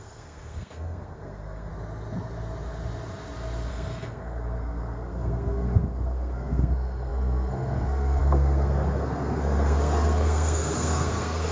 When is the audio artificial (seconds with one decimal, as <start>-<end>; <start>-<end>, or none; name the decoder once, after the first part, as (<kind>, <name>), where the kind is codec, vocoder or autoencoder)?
0.0-1.7 (codec, SNAC); 3.7-11.5